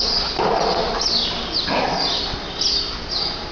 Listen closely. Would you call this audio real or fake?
real